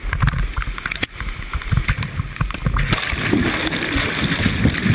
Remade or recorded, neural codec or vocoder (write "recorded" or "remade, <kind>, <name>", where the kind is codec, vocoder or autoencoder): recorded